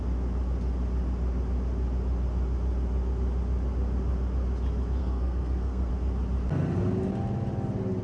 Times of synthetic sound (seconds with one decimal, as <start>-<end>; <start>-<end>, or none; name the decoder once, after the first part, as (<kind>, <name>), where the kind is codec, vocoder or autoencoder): 5.0-5.9 (codec, SNAC)